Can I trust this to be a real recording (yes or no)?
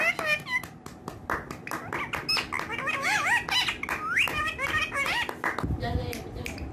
yes